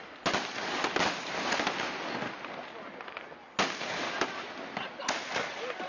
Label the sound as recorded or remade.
recorded